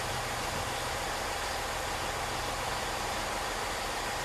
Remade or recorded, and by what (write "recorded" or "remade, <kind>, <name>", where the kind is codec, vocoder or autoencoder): recorded